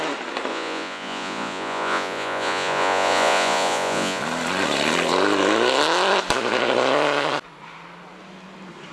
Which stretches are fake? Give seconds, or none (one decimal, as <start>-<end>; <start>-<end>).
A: 0.5-4.2